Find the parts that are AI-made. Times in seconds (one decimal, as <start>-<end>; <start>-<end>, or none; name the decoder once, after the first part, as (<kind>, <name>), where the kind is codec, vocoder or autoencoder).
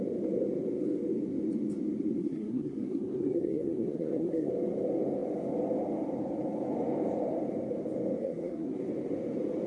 2.2-4.5 (codec, SNAC); 8.2-8.8